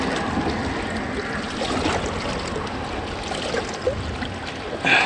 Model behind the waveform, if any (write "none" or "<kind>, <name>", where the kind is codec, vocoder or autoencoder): none